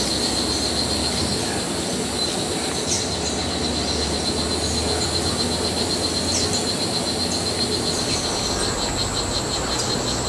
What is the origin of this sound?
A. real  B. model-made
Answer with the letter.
A